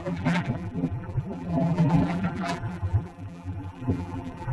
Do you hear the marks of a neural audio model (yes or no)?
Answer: yes